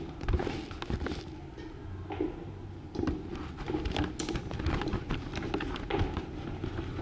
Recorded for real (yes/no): yes